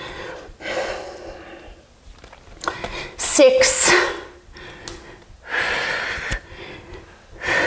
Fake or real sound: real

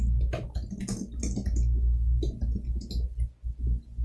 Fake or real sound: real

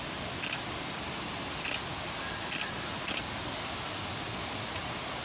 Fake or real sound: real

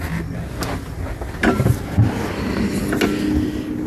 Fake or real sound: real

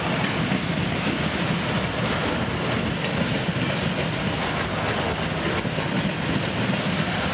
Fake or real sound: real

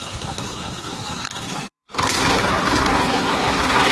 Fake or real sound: fake